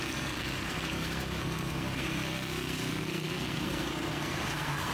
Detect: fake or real fake